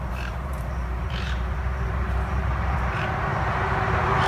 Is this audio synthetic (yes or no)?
yes